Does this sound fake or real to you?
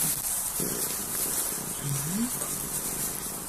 real